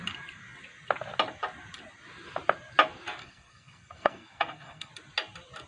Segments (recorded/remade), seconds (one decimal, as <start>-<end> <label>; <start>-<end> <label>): 0.0-3.2 recorded; 3.2-4.9 remade; 4.9-5.7 recorded